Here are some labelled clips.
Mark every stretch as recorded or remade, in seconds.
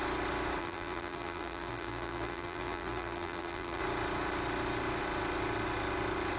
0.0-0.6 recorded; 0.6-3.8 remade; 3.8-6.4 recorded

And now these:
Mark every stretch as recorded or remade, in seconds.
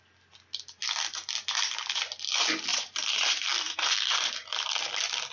0.0-2.7 recorded; 2.7-4.5 remade; 4.5-5.3 recorded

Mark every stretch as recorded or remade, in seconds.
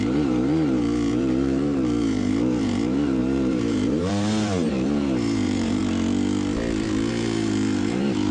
0.0-5.8 remade; 5.8-7.1 recorded; 7.1-8.3 remade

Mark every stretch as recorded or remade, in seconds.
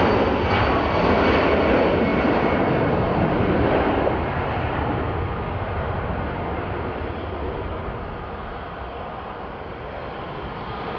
0.0-11.0 recorded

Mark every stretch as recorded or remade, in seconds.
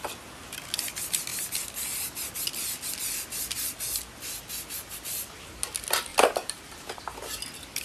0.0-6.1 recorded; 6.1-7.0 remade; 7.0-7.8 recorded